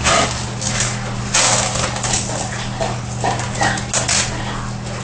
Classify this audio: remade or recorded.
recorded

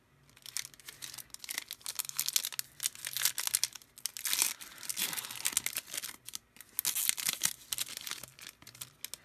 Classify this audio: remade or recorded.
recorded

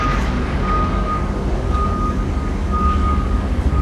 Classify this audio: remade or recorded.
remade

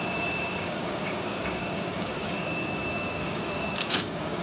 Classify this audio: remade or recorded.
remade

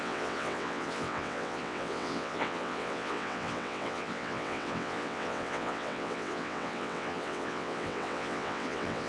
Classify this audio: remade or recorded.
remade